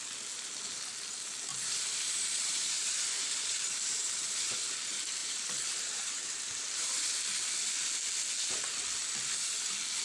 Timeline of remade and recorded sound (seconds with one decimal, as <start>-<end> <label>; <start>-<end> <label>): 0.0-1.5 recorded; 1.5-4.6 remade; 4.6-5.2 recorded; 5.2-7.0 remade; 7.0-10.0 recorded